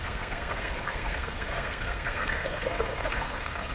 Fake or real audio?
fake